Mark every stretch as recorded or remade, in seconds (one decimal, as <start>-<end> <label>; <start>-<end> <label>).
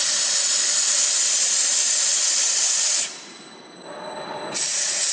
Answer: 0.0-5.1 recorded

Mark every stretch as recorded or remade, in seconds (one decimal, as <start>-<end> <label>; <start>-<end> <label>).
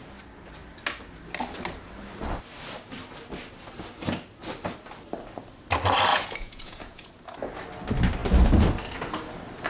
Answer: 0.0-6.1 recorded; 6.1-7.1 remade; 7.1-9.7 recorded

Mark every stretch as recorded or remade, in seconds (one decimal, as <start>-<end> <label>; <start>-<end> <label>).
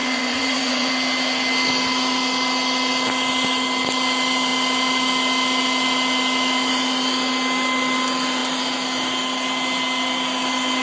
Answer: 0.0-0.9 remade; 0.9-10.8 recorded